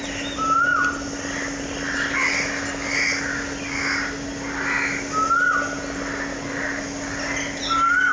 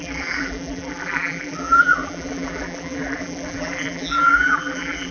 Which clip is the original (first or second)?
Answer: first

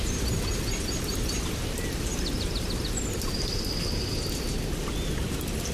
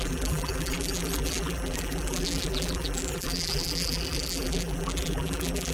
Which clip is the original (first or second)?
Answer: first